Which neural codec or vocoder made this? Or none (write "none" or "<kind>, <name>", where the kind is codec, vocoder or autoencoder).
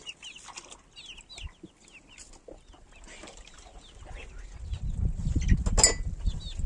none